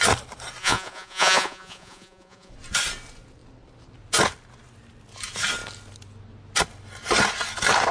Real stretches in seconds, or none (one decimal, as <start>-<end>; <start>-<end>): 0.0-0.6; 2.5-7.9